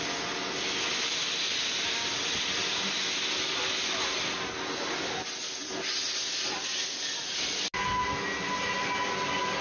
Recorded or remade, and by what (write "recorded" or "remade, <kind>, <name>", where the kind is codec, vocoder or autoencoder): recorded